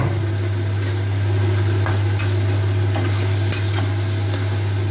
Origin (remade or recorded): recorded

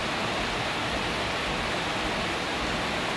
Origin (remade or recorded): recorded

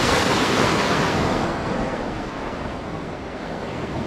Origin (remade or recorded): remade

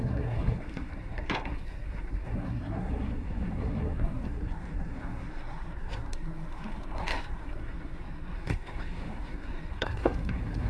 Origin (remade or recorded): remade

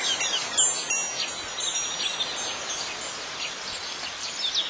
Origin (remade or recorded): recorded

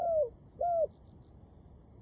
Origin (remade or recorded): recorded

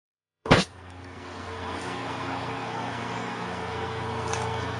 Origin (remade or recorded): remade